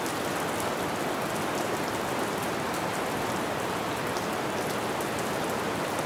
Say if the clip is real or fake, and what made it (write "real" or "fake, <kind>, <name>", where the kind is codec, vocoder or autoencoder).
real